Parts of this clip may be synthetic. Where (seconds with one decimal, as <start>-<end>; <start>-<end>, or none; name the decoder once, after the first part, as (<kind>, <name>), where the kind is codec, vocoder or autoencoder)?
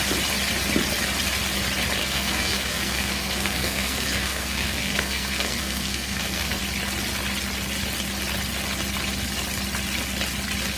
2.0-6.6 (codec, SNAC)